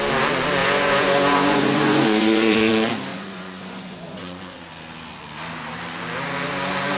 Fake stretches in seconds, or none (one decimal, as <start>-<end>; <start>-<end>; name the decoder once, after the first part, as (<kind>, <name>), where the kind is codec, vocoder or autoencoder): 0.6-2.7 (vocoder, Vocos); 3.1-4.7